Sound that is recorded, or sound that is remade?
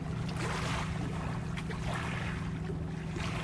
recorded